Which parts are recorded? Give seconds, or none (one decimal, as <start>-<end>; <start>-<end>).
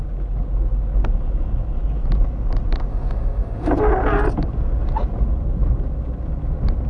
0.0-2.9; 3.7-6.9